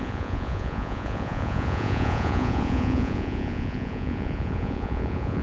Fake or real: fake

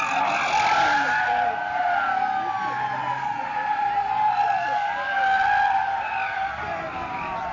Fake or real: real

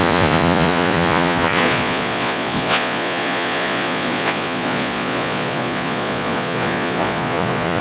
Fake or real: fake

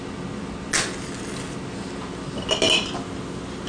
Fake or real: real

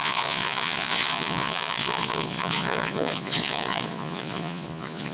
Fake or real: fake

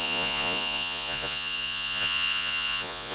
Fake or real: fake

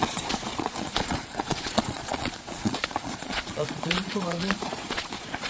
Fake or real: fake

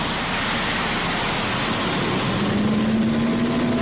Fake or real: real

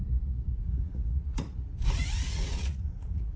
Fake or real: fake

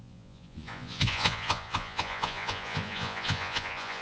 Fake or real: fake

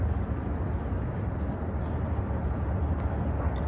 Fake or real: real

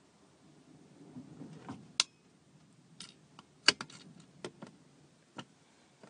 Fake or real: real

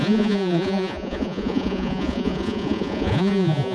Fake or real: fake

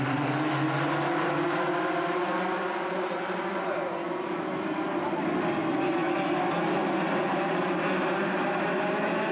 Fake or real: real